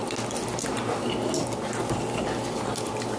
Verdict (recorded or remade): recorded